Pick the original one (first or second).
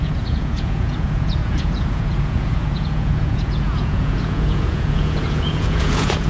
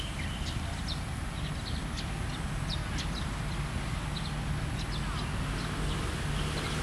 second